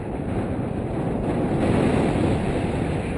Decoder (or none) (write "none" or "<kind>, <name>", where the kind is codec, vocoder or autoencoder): none